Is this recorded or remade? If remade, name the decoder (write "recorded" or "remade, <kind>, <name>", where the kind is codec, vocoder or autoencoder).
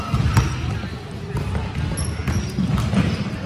recorded